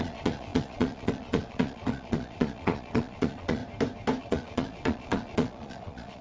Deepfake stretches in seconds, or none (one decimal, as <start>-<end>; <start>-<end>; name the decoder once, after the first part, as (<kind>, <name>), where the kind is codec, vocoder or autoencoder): 0.0-3.6 (vocoder, Vocos); 4.2-6.2